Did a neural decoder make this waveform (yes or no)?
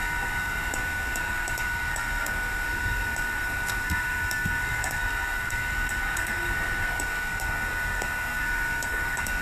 yes